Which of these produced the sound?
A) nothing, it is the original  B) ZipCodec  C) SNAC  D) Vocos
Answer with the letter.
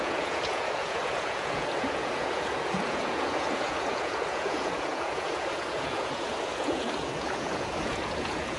D